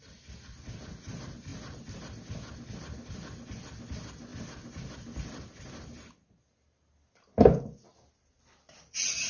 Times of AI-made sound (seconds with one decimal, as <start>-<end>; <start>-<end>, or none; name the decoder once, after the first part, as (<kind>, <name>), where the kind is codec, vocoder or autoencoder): none